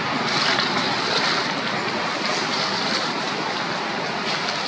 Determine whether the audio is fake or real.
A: real